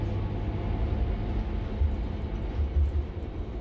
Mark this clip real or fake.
real